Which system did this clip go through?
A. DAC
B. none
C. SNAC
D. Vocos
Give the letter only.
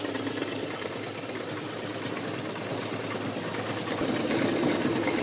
B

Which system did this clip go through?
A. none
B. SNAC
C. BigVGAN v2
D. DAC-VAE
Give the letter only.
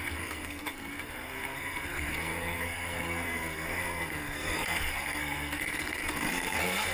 B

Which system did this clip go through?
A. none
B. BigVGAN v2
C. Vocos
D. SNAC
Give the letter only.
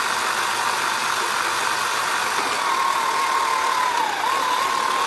A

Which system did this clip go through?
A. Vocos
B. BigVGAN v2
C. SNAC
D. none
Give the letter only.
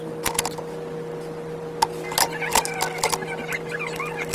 D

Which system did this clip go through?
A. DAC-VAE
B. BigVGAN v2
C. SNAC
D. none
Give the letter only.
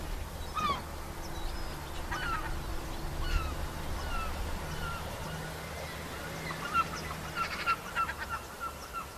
D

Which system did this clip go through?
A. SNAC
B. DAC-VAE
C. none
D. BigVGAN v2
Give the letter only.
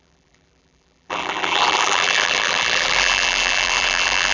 D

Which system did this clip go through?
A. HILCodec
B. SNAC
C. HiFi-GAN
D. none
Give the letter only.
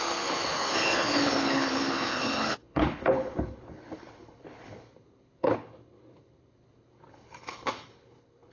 A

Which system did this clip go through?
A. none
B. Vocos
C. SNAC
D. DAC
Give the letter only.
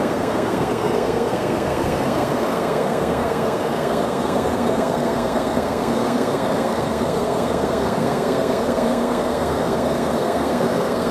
C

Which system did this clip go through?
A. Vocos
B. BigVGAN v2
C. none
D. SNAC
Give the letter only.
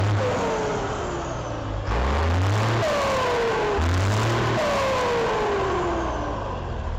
C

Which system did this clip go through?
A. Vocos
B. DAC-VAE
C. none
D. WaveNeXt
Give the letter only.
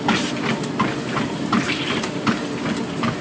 C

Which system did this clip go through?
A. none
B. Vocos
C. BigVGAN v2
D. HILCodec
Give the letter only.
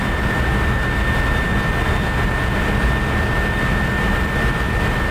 A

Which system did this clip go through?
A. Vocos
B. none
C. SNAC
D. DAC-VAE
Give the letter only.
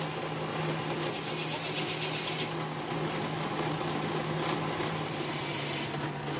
B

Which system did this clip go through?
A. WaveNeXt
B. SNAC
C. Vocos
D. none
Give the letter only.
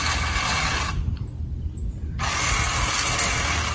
D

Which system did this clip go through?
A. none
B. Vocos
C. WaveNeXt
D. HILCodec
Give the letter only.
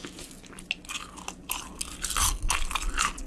A